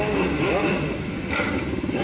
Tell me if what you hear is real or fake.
real